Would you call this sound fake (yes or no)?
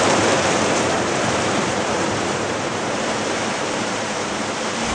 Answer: yes